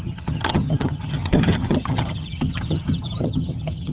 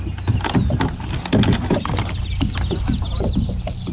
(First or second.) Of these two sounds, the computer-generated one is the first